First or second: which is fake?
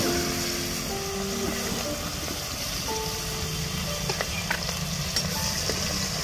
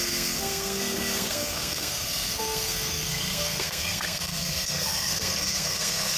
second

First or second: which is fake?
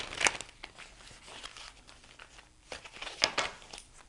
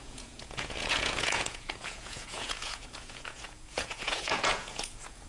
second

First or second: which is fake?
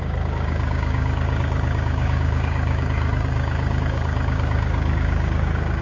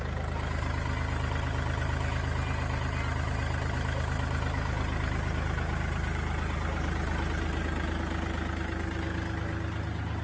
first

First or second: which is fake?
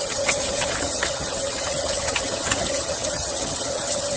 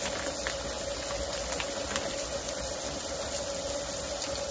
first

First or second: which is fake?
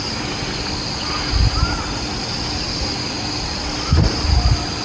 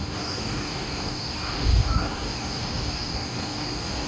second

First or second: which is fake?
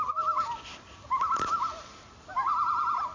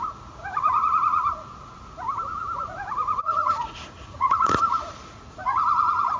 second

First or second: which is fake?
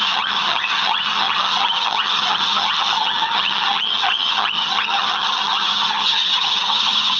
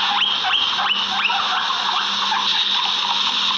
first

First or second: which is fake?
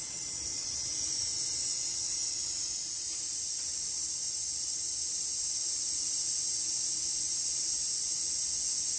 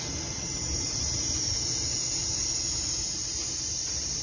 second